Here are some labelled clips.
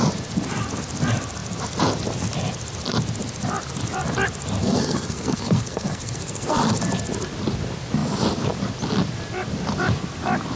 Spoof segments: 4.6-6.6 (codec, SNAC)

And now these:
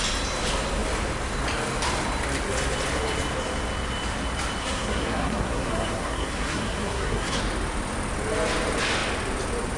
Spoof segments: 4.6-7.4 (codec, SNAC)

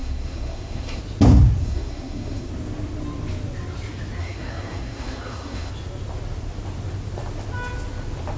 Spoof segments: 0.0-1.0 (codec, SNAC); 1.6-2.5; 4.2-5.7

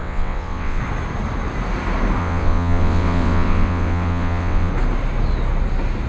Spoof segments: 0.0-0.8 (vocoder, WaveNeXt); 2.2-4.7